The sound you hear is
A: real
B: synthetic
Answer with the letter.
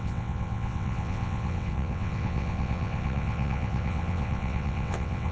B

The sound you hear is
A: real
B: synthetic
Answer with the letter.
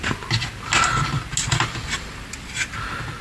A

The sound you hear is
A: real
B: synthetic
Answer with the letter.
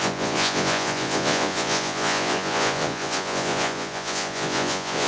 B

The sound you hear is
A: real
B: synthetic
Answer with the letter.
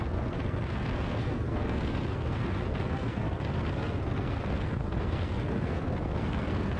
B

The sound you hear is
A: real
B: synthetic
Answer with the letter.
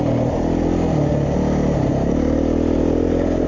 A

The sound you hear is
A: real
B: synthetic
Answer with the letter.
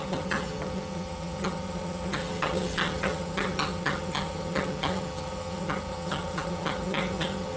B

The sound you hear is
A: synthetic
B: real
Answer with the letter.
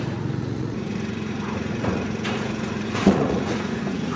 A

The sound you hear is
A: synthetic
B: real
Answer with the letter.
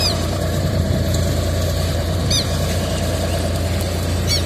A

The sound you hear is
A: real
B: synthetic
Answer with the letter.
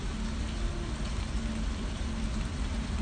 A